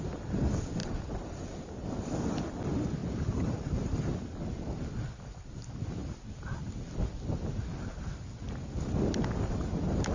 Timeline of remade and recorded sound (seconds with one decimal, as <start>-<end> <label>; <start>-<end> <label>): 0.0-0.8 recorded; 0.8-1.4 remade; 1.4-3.0 recorded; 3.0-4.8 remade; 4.8-10.1 recorded